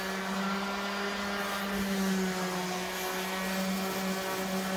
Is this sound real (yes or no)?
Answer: yes